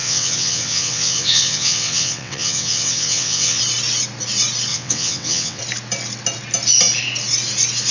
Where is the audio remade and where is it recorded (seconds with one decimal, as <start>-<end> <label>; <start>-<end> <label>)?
0.0-3.6 remade; 3.6-4.7 recorded; 4.7-5.6 remade; 5.6-7.9 recorded